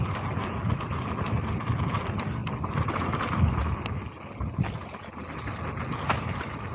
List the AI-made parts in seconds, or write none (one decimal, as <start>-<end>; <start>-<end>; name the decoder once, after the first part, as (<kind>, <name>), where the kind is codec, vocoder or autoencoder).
none